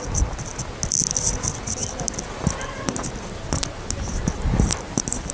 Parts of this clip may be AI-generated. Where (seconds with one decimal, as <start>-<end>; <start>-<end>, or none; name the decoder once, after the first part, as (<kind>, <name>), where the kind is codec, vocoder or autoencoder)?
none